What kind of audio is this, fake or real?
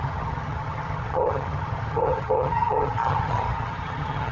fake